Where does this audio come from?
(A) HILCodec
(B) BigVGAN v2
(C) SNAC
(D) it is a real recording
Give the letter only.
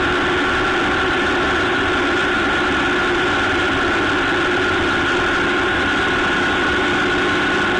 D